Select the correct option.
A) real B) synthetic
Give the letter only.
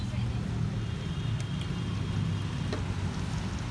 A